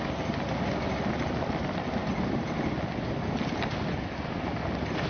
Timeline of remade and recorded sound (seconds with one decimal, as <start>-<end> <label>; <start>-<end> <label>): 0.0-5.1 recorded